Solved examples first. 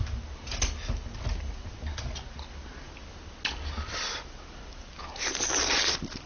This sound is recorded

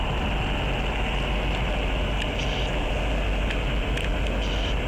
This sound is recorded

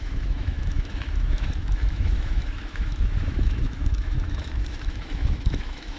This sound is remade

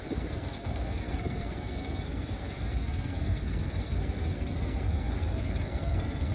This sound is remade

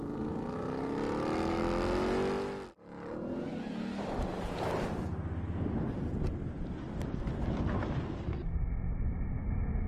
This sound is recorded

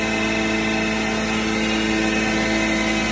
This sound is recorded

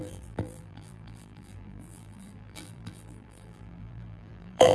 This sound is remade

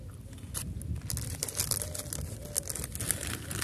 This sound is recorded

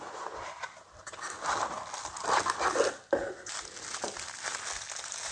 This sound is recorded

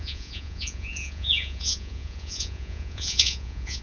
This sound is remade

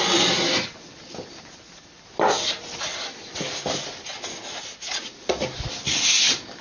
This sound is recorded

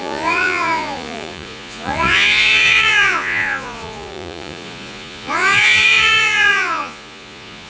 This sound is remade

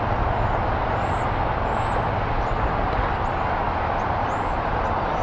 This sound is recorded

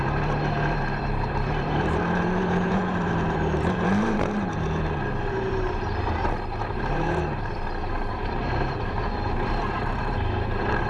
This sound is remade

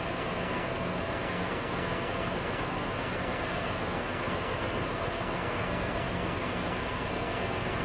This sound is remade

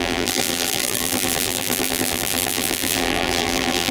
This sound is remade